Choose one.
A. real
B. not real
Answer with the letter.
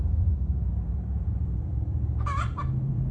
B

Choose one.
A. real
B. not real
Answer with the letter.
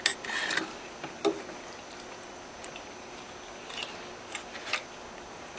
A